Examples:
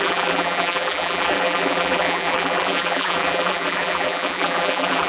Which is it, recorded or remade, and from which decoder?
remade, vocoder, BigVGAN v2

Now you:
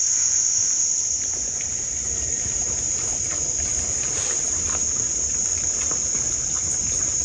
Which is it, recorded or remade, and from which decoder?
recorded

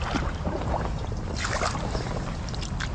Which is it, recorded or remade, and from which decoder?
recorded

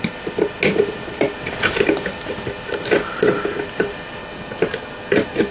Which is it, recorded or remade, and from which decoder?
recorded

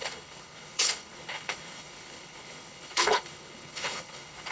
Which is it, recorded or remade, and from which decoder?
remade, codec, HILCodec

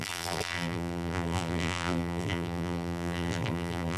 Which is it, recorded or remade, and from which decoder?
remade, vocoder, BigVGAN v2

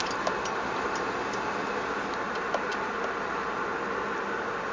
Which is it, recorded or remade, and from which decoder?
recorded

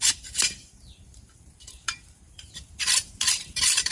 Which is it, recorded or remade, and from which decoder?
remade, vocoder, BigVGAN v2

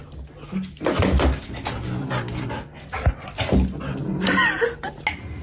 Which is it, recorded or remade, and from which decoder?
recorded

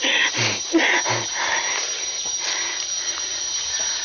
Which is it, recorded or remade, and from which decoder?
recorded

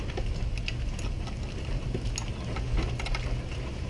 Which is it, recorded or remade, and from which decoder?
recorded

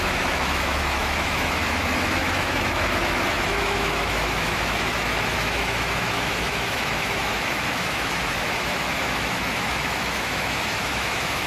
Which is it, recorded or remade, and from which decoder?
remade, autoencoder, DAC-VAE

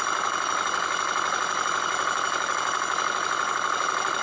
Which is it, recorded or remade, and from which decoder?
recorded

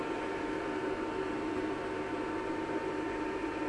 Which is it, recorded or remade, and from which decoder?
recorded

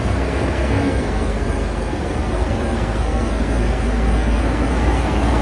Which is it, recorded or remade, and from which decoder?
remade, codec, SNAC